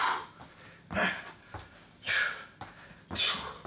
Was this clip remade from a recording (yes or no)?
no